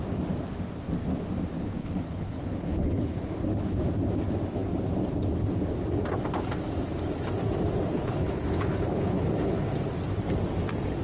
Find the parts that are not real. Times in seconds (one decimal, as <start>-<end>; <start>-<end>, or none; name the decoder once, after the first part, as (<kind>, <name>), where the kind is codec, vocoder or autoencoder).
1.8-3.4 (codec, HILCodec); 7.9-9.8